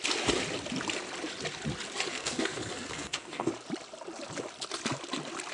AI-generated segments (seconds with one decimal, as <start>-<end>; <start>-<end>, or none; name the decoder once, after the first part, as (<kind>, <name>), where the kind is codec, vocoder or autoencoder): 2.1-3.5 (codec, SNAC)

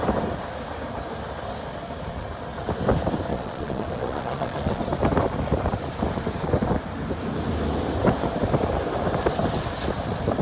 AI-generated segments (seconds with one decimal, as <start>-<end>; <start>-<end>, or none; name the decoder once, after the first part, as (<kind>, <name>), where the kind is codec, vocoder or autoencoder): 3.3-4.8 (vocoder, Vocos)